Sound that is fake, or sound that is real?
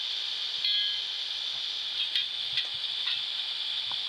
real